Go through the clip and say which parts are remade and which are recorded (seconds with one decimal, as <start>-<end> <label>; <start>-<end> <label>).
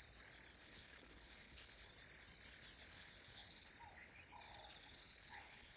0.0-0.6 recorded; 0.6-1.9 remade; 1.9-2.9 recorded; 2.9-3.7 remade; 3.7-4.8 recorded; 4.8-5.8 remade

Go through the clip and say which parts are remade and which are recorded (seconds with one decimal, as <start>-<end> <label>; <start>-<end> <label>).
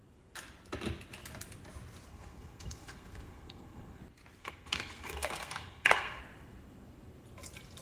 0.0-2.1 recorded; 2.1-4.0 remade; 4.0-4.4 recorded; 4.4-6.2 remade; 6.2-7.8 recorded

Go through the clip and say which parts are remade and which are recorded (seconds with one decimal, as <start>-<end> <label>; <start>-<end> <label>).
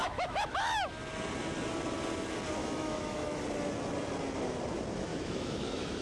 0.0-0.9 remade; 0.9-2.6 recorded; 2.6-3.4 remade; 3.4-5.1 recorded; 5.1-6.0 remade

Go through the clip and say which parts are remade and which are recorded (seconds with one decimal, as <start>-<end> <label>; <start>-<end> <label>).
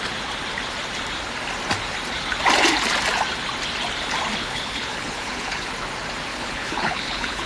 0.0-4.4 recorded; 4.4-5.7 remade; 5.7-6.3 recorded; 6.3-7.5 remade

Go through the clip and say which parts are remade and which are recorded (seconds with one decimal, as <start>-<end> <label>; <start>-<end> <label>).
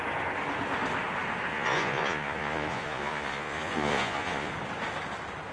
0.0-1.5 recorded; 1.5-4.5 remade; 4.5-5.5 recorded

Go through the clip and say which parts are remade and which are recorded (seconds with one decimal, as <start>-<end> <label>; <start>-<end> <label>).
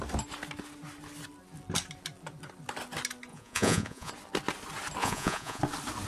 0.0-3.3 recorded; 3.3-4.1 remade; 4.1-5.0 recorded; 5.0-5.6 remade; 5.6-6.1 recorded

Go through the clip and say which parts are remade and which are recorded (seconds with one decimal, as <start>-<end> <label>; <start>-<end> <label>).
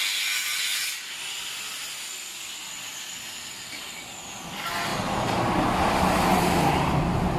0.0-4.9 recorded; 4.9-5.4 remade; 5.4-6.3 recorded; 6.3-6.9 remade; 6.9-7.4 recorded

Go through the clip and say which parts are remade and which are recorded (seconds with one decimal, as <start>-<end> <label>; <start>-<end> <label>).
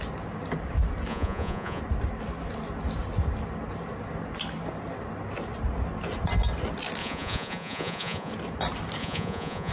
0.0-1.1 recorded; 1.1-1.8 remade; 1.8-7.0 recorded; 7.0-8.3 remade; 8.3-9.0 recorded; 9.0-9.7 remade